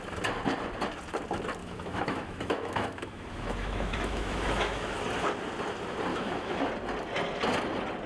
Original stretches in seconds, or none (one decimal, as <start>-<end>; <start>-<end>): 0.0-1.6; 5.0-6.1; 6.7-8.1